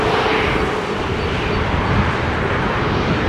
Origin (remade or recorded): recorded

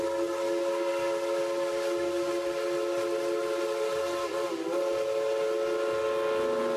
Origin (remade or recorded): recorded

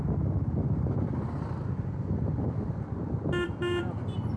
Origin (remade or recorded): recorded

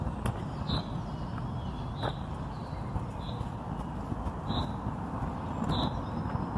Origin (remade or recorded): recorded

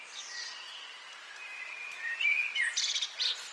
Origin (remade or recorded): recorded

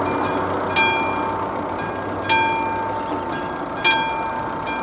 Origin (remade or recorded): recorded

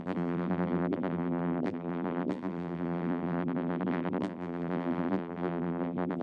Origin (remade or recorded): remade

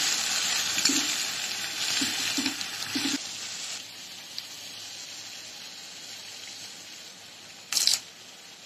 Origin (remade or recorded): recorded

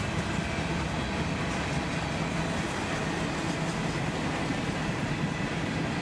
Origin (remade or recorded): recorded